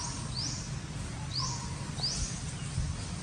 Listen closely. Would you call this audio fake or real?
real